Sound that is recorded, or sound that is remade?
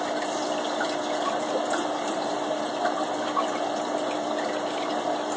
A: recorded